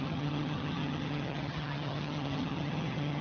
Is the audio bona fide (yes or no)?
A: no